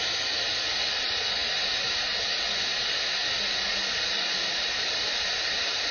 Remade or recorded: recorded